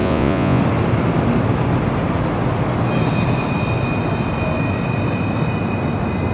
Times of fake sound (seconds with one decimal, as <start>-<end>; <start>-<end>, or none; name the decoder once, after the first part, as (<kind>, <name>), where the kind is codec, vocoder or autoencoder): 0.0-0.6 (vocoder, Vocos)